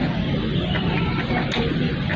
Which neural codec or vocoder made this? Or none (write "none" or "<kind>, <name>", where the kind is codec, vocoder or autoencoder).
none